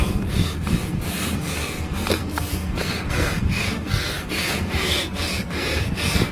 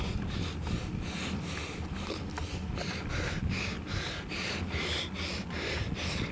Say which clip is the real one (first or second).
second